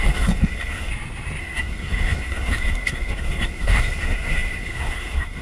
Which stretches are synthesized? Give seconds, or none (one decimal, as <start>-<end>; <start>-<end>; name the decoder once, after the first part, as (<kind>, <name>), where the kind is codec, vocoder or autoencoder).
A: 0.0-0.9 (codec, SNAC); 1.4-5.4